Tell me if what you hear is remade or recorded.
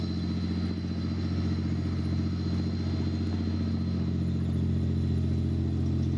recorded